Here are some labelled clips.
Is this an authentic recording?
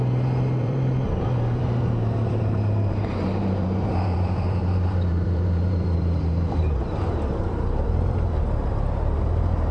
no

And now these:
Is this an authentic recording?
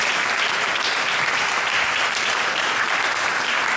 no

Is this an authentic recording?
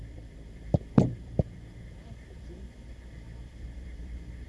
no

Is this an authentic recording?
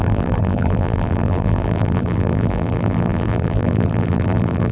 no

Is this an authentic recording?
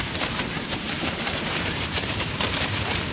no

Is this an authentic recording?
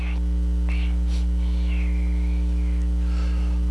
yes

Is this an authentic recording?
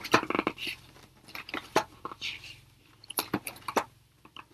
no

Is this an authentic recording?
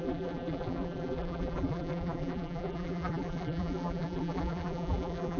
no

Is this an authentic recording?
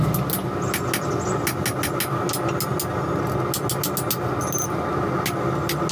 yes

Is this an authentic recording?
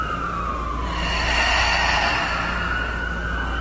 yes